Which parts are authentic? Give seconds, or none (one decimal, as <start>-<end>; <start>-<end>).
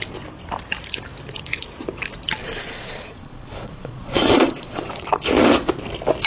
0.0-2.4; 4.9-6.3